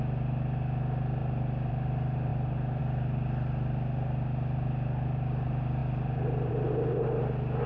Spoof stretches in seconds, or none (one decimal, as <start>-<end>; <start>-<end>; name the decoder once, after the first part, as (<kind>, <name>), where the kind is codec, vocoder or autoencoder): none